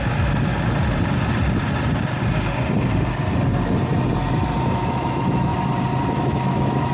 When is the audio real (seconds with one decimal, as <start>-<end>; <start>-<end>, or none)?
0.5-4.6; 5.5-6.1